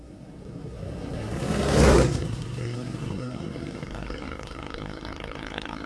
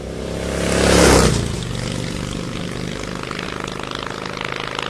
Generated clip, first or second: first